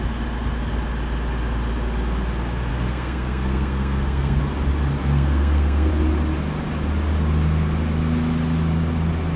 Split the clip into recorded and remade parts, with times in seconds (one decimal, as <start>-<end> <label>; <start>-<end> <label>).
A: 0.0-2.7 recorded; 2.7-4.4 remade; 4.4-5.0 recorded; 5.0-5.9 remade; 5.9-9.4 recorded